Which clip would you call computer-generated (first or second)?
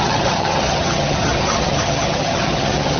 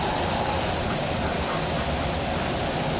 first